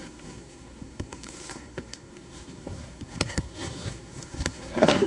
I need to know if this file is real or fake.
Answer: fake